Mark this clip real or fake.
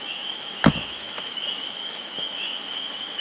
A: fake